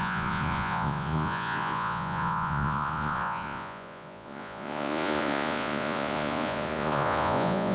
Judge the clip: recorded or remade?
remade